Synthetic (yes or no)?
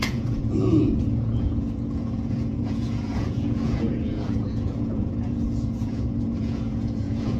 yes